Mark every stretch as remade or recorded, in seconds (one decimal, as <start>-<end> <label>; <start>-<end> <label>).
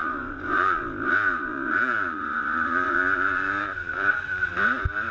0.0-0.8 remade; 0.8-1.5 recorded; 1.5-4.5 remade; 4.5-5.1 recorded